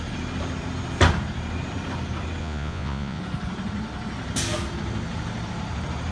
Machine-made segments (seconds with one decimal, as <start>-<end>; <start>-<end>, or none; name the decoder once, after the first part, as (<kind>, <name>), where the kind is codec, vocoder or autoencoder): 2.4-3.2 (vocoder, Vocos)